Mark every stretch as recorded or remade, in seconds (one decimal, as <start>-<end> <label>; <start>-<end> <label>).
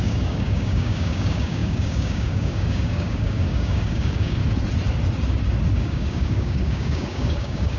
0.0-4.4 remade; 4.4-5.7 recorded; 5.7-7.8 remade